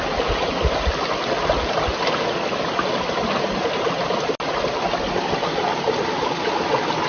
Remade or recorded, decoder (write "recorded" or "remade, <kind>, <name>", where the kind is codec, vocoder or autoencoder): recorded